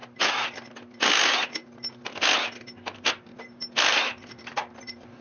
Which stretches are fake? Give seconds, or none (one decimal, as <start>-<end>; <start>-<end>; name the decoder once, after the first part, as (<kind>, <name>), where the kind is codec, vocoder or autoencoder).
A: none